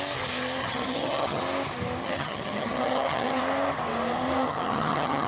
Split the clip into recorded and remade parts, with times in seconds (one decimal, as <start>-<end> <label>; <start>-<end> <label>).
0.0-0.6 recorded; 0.6-1.4 remade; 1.4-2.0 recorded; 2.0-3.4 remade; 3.4-4.4 recorded; 4.4-5.3 remade